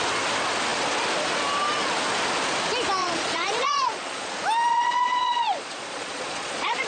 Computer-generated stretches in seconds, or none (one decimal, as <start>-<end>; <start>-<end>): 3.0-4.3; 4.7-6.9